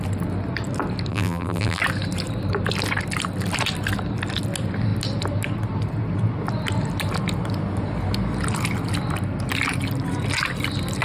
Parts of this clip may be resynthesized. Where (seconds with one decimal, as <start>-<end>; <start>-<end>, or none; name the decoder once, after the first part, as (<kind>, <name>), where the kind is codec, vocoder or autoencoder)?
1.1-1.8 (vocoder, BigVGAN v2)